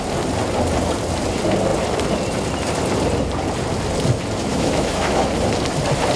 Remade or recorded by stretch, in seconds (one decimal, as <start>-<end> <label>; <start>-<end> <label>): 0.0-4.5 recorded; 4.5-5.2 remade; 5.2-6.2 recorded